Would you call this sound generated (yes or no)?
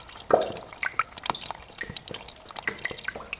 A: no